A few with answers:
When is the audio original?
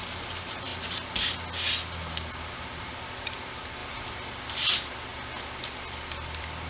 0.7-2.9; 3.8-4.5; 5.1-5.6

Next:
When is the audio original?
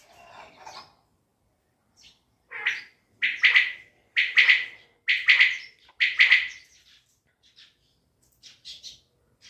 0.0-9.5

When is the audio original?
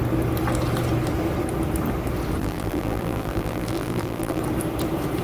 0.0-2.4; 4.4-5.2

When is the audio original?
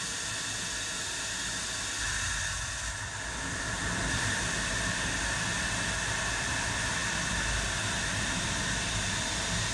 0.0-9.7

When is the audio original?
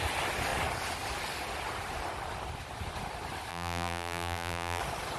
0.0-3.5; 4.8-5.2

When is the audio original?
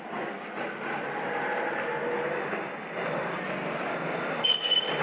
0.0-2.3; 3.4-3.9